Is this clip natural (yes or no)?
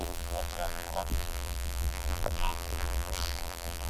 no